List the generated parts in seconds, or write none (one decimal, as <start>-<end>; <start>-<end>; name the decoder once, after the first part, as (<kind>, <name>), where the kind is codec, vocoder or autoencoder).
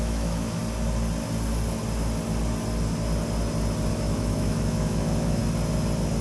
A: 0.0-0.6 (autoencoder, DAC-VAE); 3.9-5.4